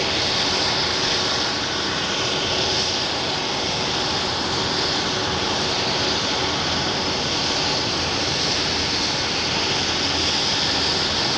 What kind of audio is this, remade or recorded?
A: recorded